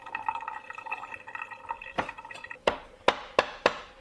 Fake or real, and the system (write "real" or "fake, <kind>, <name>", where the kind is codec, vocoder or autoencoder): real